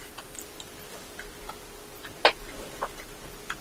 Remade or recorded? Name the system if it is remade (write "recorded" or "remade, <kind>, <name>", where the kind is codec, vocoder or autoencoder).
recorded